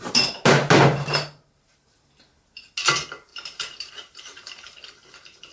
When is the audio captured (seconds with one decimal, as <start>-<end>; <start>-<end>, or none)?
0.0-0.9; 2.3-3.3; 3.9-5.5